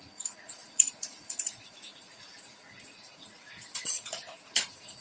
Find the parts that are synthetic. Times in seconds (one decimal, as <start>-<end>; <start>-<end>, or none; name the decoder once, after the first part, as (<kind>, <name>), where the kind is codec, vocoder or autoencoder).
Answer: 0.0-5.0 (vocoder, Vocos)